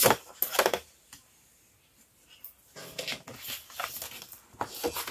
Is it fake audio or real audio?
real